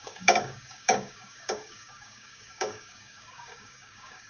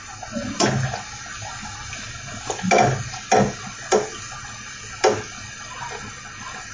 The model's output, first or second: first